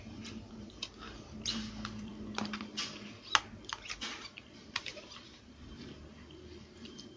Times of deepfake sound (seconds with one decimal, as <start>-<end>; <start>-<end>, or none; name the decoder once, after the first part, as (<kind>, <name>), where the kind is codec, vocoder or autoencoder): 0.0-2.1 (vocoder, BigVGAN v2); 4.1-7.2